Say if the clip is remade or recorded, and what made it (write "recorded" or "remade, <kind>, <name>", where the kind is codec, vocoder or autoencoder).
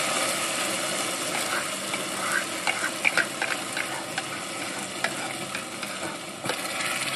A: recorded